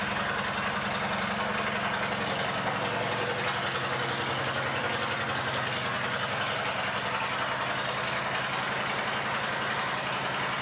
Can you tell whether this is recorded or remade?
recorded